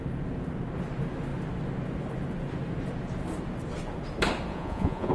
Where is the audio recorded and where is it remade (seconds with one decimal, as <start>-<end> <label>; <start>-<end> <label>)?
0.0-4.5 recorded; 4.5-5.1 remade